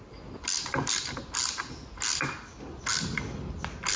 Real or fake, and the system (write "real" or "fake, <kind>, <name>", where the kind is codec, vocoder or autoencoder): real